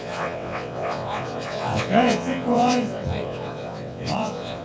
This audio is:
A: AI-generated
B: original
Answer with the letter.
A